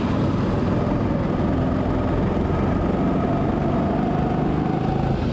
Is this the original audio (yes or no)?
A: yes